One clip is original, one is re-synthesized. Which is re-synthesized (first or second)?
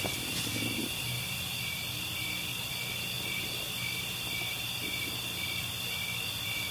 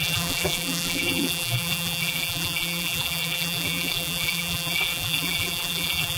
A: second